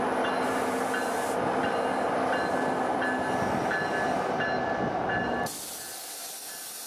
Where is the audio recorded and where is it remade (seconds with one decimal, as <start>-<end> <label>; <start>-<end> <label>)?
0.0-6.9 recorded